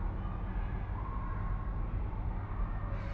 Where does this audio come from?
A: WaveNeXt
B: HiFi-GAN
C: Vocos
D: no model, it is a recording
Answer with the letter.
D